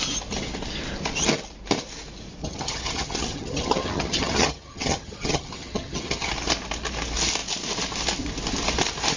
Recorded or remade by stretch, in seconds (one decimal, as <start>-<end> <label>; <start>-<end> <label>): 0.0-2.4 recorded; 2.4-6.3 remade; 6.3-9.2 recorded